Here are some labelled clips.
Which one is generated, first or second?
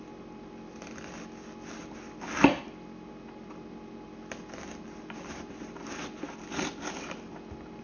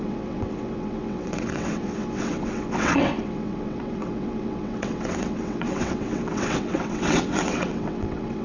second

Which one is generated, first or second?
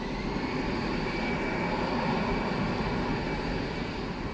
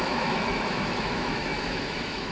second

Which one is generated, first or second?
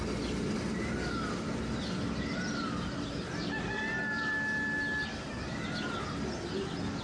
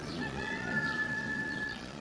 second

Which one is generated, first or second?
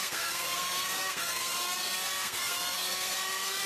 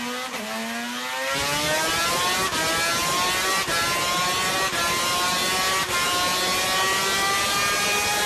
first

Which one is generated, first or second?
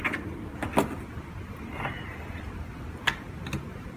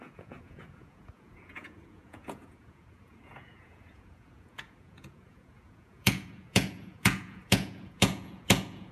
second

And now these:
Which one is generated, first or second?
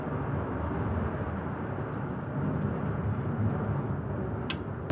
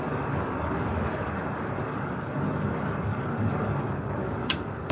second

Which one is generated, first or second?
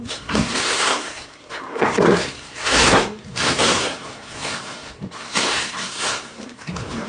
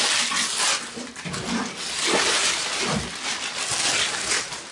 first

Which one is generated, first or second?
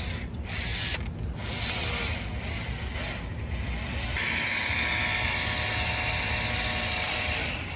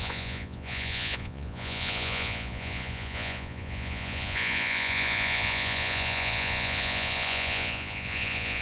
second